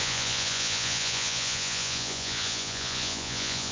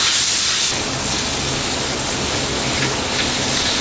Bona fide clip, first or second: second